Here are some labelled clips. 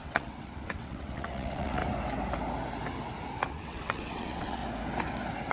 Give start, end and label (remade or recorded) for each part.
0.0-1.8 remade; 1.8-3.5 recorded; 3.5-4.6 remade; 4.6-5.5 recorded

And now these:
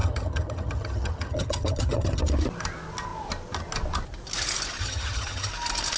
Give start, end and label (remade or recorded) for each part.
0.0-2.2 remade; 2.2-4.8 recorded; 4.8-5.5 remade; 5.5-6.0 recorded

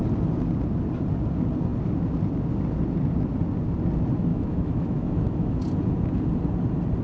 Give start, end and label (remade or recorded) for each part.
0.0-4.3 recorded; 4.3-5.6 remade; 5.6-7.0 recorded

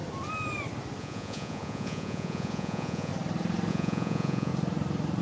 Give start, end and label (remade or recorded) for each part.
0.0-1.0 recorded; 1.0-3.1 remade; 3.1-3.7 recorded; 3.7-4.5 remade; 4.5-5.2 recorded

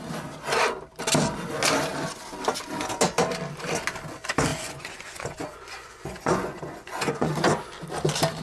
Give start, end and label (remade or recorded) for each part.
0.0-4.5 recorded; 4.5-7.3 remade; 7.3-8.4 recorded

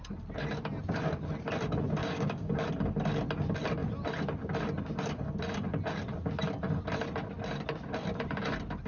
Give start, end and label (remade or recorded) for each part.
0.0-2.0 recorded; 2.0-2.6 remade; 2.6-8.9 recorded